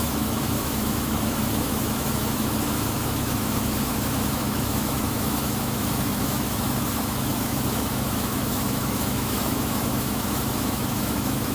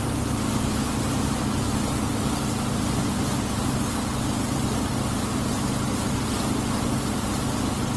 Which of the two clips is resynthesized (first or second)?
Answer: first